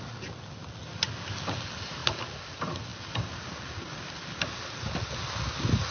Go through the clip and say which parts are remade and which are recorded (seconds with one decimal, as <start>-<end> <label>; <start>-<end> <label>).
0.0-5.9 recorded